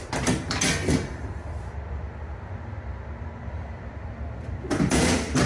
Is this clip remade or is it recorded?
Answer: remade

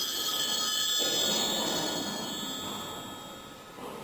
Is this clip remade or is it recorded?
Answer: recorded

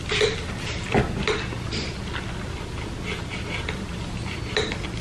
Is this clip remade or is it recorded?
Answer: recorded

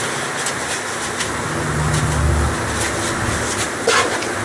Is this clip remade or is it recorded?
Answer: recorded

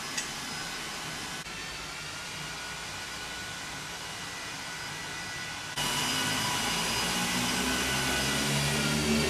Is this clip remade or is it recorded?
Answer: recorded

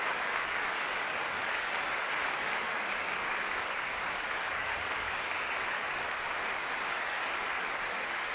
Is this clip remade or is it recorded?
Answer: remade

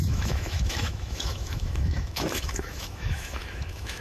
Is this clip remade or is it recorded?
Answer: remade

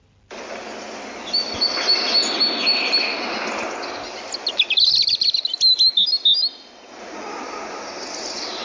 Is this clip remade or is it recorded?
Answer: recorded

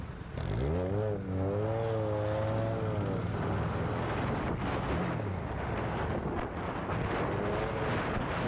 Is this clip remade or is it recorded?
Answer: recorded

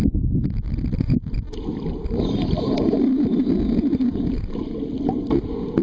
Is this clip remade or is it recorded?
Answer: recorded